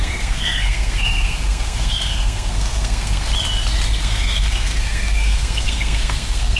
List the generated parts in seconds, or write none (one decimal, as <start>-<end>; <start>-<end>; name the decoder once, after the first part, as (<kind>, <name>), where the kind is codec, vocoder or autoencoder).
0.0-3.3 (codec, SNAC); 4.0-6.6